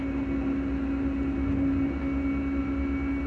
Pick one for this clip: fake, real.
real